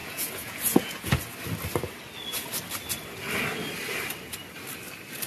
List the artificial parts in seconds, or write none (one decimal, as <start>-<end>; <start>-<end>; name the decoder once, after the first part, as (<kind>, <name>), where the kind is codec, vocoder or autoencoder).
0.0-1.2 (vocoder, Vocos)